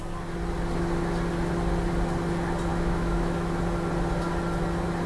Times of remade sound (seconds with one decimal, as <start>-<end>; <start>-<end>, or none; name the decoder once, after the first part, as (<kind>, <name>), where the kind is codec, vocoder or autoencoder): 2.7-3.6 (autoencoder, DAC-VAE)